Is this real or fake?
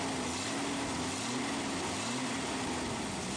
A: real